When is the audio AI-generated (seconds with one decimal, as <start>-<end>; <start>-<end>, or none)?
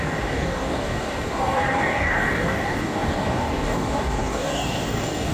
0.0-5.3